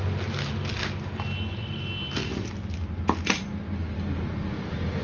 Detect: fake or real real